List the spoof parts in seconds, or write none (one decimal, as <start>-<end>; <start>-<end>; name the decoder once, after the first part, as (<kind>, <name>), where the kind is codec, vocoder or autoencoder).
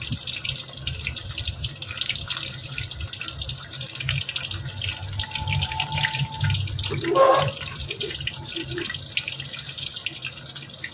none